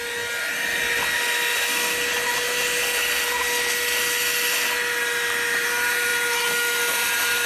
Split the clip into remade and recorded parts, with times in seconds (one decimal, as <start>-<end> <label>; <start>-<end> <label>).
0.0-7.5 recorded